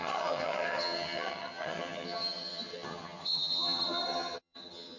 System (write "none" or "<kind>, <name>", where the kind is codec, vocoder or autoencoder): vocoder, HiFi-GAN